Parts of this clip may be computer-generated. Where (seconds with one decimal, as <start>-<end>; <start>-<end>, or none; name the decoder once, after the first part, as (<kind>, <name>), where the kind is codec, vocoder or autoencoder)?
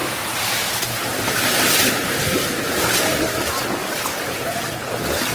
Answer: 0.0-2.9 (vocoder, BigVGAN v2); 3.8-4.4